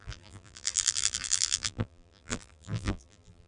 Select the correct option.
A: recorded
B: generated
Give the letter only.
B